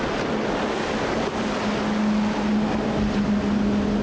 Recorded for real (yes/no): yes